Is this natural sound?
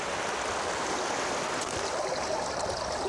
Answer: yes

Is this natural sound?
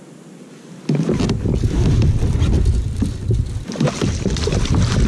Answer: yes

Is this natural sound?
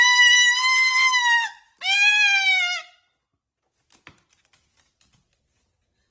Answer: yes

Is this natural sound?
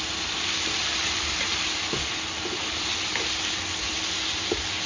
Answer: no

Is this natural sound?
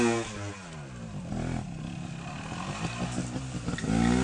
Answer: yes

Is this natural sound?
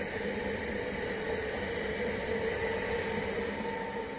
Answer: yes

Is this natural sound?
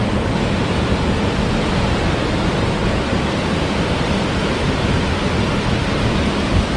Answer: yes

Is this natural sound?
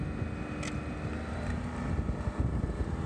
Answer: yes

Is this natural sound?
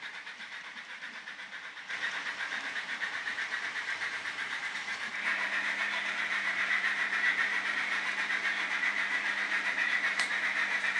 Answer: no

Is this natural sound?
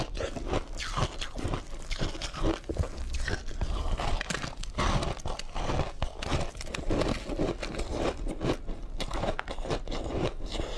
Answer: yes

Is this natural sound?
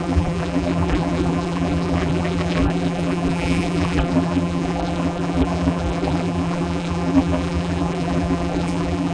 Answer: no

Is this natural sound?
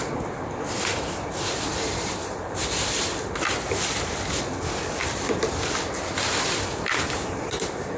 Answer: no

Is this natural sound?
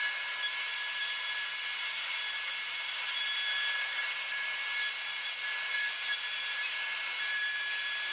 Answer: no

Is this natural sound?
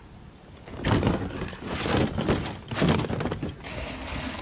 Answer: yes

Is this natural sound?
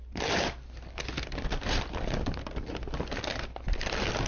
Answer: yes